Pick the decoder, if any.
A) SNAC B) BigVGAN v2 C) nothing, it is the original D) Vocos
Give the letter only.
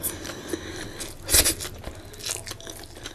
C